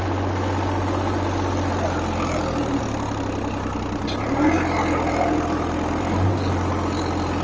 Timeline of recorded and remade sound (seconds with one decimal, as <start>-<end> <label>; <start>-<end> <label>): 0.0-7.4 recorded